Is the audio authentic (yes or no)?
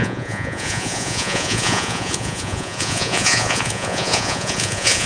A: no